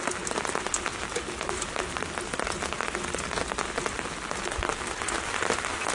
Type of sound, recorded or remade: recorded